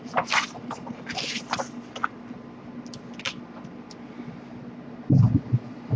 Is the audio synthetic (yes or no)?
no